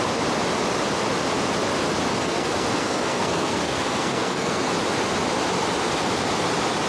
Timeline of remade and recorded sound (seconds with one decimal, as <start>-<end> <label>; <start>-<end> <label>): 0.0-2.2 recorded; 2.2-4.7 remade; 4.7-6.9 recorded